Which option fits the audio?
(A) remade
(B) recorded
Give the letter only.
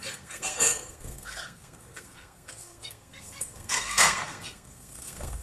A